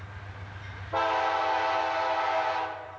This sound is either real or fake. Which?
real